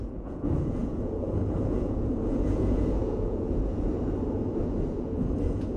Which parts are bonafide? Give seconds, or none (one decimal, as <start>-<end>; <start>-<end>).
3.9-4.6